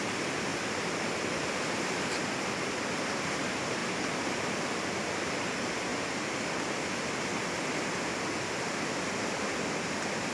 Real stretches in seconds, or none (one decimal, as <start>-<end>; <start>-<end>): 0.0-10.3